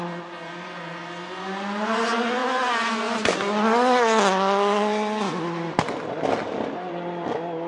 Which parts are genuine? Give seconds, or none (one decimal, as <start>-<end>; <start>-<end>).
0.0-7.7